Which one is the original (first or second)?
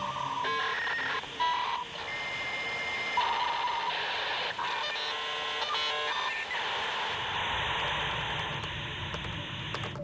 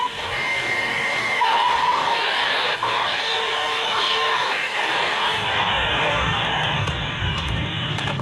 first